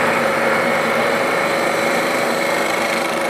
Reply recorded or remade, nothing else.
remade